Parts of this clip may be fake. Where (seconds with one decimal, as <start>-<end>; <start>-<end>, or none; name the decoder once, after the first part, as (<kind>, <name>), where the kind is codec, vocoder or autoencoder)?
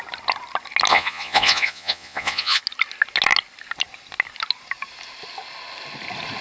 0.9-2.6 (vocoder, Vocos)